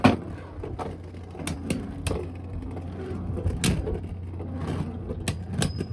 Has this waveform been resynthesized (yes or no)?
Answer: no